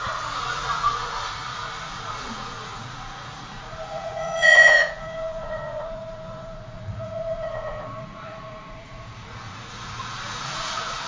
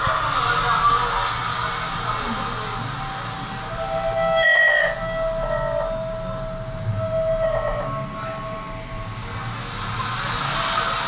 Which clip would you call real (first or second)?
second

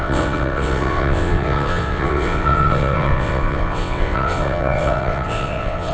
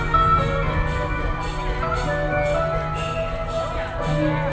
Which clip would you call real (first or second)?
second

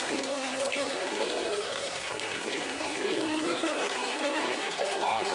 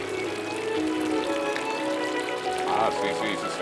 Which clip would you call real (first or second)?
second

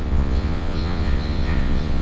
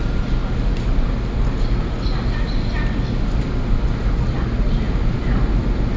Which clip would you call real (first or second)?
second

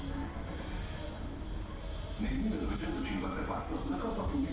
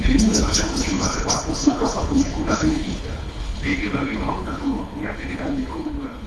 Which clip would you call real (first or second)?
first